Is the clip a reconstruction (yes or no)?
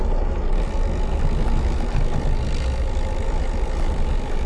no